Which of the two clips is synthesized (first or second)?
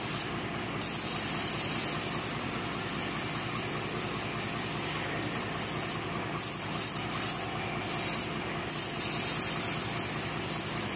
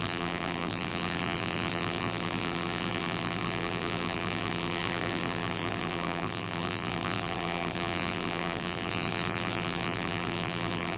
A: second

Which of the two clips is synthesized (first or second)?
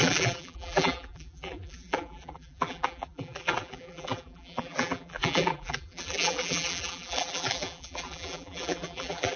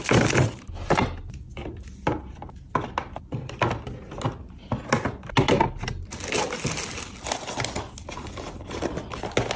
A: first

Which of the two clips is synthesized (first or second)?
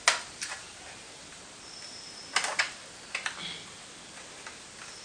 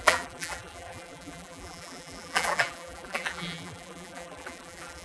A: second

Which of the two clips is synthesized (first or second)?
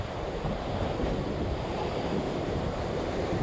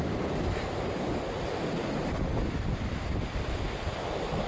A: first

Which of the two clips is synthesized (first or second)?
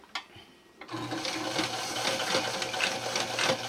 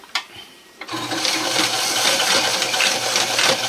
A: second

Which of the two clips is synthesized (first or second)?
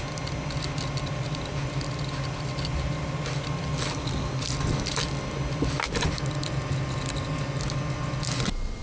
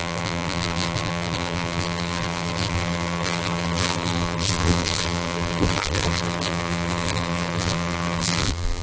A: second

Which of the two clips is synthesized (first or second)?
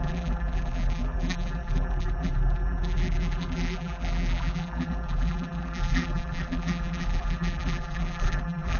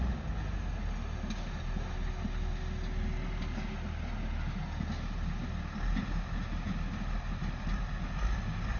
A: first